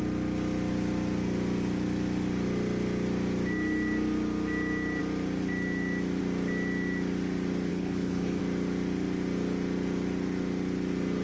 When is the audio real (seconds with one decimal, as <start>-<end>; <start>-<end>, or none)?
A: 0.0-7.7; 8.4-11.2